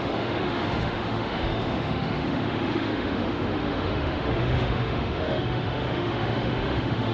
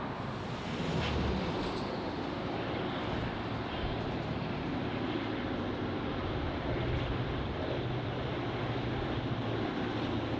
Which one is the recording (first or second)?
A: second